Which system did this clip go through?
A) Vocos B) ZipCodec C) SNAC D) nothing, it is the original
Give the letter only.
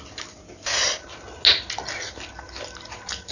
D